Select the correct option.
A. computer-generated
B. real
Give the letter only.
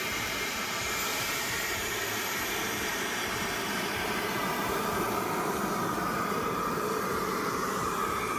A